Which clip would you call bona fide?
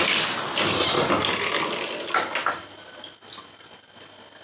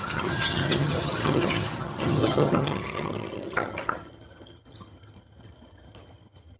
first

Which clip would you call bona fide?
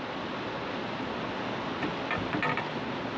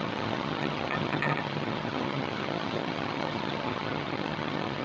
first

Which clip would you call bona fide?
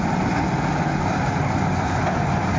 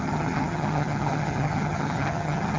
first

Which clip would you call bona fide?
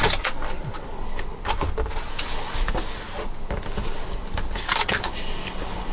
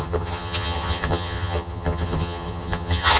first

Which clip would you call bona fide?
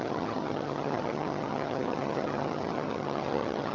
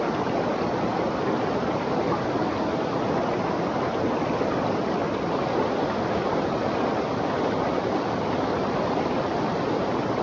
second